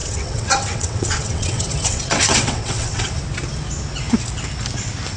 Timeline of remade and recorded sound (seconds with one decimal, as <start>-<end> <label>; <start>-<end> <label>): 0.0-3.1 remade; 3.1-5.2 recorded